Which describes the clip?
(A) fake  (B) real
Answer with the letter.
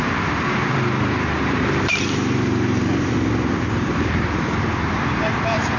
A